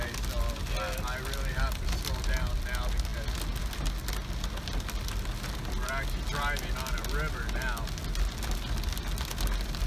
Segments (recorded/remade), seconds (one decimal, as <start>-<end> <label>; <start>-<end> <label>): 0.0-9.9 recorded

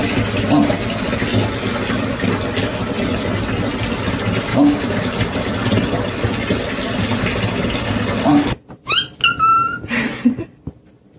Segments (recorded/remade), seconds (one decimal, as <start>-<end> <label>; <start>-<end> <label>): 0.0-4.5 recorded; 4.5-5.1 remade; 5.1-11.2 recorded

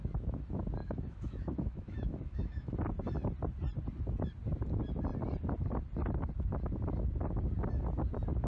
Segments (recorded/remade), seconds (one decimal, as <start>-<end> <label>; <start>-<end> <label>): 0.0-0.8 recorded; 0.8-2.7 remade; 2.7-8.5 recorded

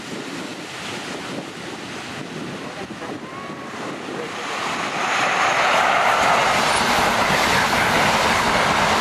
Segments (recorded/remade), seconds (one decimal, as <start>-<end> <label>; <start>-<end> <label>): 0.0-9.0 recorded

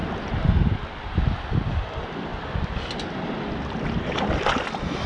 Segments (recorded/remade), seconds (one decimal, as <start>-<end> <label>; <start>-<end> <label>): 0.0-2.3 recorded; 2.3-2.9 remade; 2.9-5.1 recorded

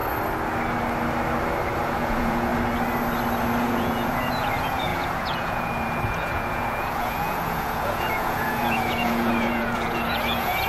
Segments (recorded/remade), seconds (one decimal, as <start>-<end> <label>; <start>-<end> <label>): 0.0-1.8 recorded; 1.8-2.5 remade; 2.5-3.6 recorded; 3.6-10.7 remade

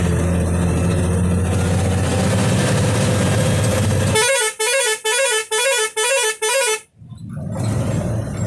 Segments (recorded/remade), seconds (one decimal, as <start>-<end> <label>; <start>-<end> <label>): 0.0-8.5 recorded

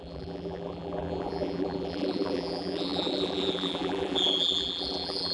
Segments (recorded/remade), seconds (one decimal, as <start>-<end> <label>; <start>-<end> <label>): 0.0-5.3 remade